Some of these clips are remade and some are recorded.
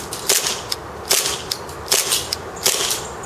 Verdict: recorded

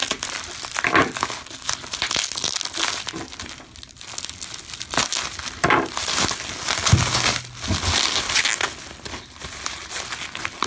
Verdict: recorded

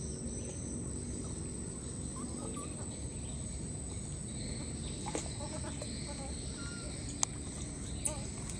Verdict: recorded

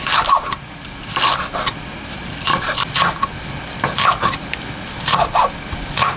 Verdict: recorded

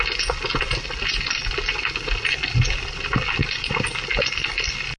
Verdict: recorded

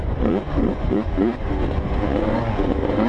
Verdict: remade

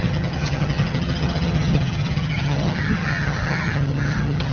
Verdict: remade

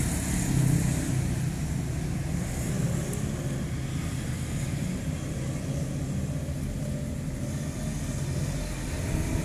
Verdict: recorded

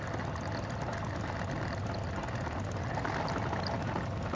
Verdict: recorded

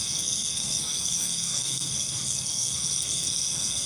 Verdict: remade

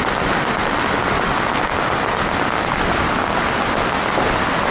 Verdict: recorded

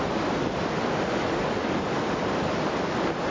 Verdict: recorded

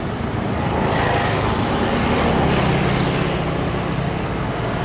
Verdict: recorded